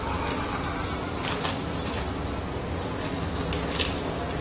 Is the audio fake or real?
real